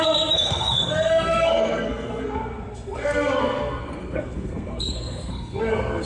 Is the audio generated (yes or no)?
yes